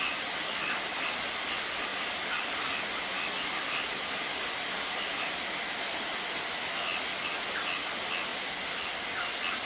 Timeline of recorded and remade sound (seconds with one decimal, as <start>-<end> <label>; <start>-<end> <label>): 0.0-9.6 recorded